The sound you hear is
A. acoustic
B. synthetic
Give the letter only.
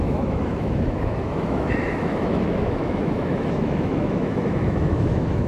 B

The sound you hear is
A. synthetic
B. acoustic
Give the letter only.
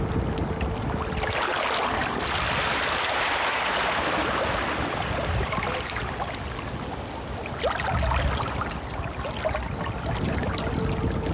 B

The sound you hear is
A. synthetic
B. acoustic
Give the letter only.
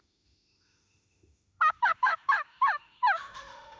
A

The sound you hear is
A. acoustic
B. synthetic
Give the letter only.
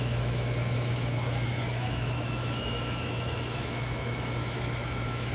B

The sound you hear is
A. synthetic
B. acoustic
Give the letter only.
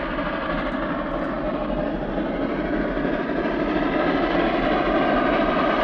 B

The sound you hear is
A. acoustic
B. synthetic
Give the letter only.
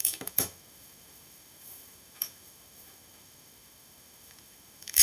B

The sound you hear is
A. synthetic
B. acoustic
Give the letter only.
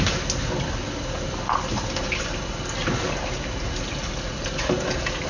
B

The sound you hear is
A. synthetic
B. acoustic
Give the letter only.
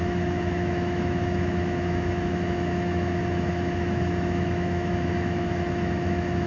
A